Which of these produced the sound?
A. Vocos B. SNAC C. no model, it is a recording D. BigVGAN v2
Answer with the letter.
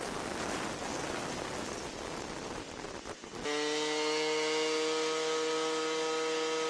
C